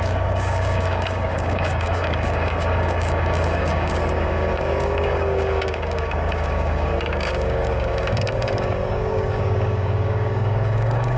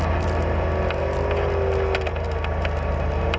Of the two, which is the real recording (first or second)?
second